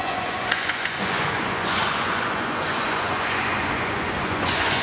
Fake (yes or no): yes